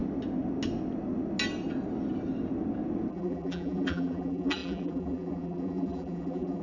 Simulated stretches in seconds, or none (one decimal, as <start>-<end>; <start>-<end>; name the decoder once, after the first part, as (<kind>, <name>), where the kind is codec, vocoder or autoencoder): 3.1-6.6 (vocoder, BigVGAN v2)